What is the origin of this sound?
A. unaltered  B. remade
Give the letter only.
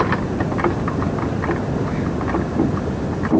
A